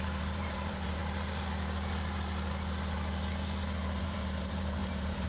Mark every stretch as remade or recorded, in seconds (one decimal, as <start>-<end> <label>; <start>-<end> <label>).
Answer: 0.0-1.0 remade; 1.0-4.0 recorded; 4.0-5.3 remade